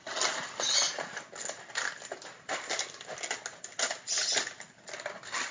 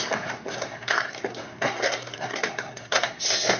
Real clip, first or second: first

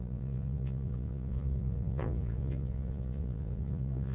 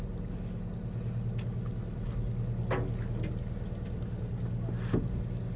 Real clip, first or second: second